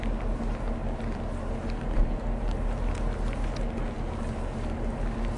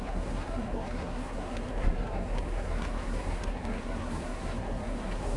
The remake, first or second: second